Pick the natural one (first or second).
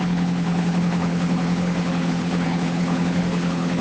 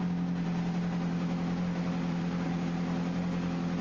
second